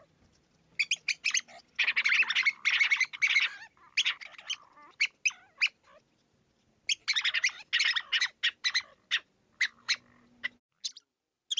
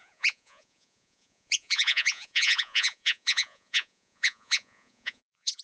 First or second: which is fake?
second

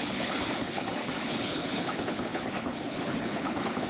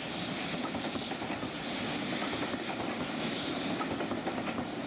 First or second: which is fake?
first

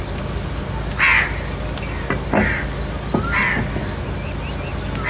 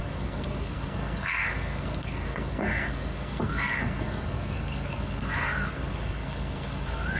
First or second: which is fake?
second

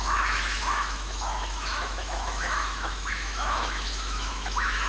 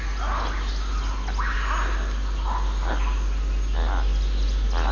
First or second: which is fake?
first